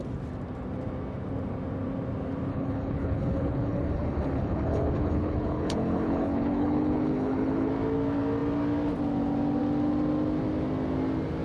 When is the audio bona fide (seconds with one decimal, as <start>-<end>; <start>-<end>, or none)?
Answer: 0.0-2.5; 7.7-11.4